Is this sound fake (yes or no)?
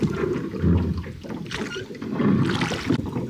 no